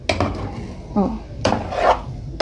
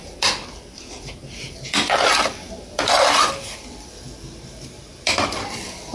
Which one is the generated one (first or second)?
second